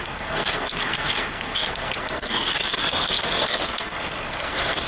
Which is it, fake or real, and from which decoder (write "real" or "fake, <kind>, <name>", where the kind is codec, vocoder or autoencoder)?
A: fake, codec, SNAC